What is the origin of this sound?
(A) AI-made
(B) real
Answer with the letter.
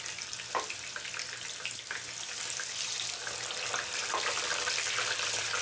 B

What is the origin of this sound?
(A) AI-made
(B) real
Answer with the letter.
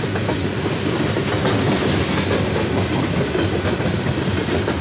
B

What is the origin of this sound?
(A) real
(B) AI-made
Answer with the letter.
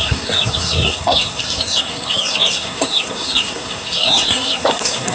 B